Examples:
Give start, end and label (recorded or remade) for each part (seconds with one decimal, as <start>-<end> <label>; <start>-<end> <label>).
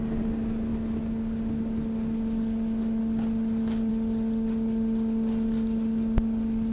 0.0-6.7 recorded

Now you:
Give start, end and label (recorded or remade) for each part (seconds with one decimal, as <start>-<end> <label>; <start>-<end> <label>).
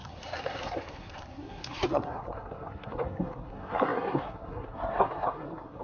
0.0-5.8 remade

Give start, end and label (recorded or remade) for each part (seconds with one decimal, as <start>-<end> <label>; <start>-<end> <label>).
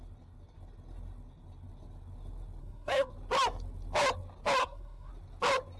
0.0-2.6 recorded; 2.6-3.1 remade; 3.1-4.6 recorded; 4.6-5.1 remade; 5.1-5.8 recorded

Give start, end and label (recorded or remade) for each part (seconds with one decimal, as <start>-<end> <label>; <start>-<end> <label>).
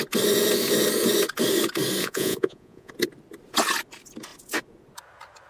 0.0-2.0 recorded; 2.0-2.9 remade; 2.9-5.5 recorded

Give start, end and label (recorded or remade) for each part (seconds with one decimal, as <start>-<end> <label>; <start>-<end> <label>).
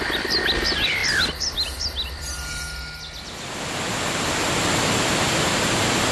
0.0-6.1 recorded